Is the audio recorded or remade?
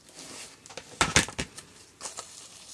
recorded